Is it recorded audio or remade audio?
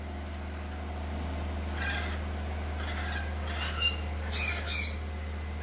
recorded